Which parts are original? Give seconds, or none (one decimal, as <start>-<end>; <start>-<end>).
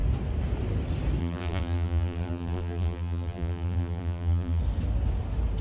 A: 0.0-1.2; 4.6-5.6